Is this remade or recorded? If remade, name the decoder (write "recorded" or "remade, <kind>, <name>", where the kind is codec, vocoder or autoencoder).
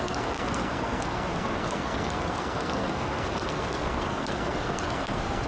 remade, codec, SNAC